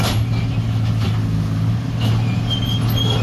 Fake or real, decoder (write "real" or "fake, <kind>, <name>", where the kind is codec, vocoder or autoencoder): real